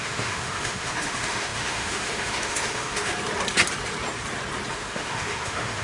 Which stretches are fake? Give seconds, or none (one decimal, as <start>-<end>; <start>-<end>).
0.0-3.1; 4.7-5.8